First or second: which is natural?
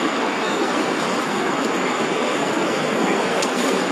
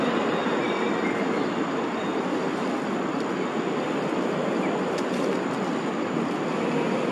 second